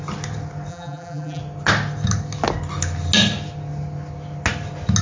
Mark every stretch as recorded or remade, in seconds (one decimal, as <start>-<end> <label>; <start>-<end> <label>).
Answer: 0.0-0.7 recorded; 0.7-1.4 remade; 1.4-5.0 recorded